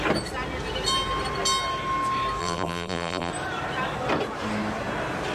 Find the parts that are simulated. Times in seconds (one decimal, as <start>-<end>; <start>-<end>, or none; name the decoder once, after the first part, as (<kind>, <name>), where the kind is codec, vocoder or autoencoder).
2.4-3.3 (vocoder, BigVGAN v2)